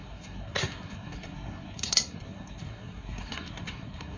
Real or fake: fake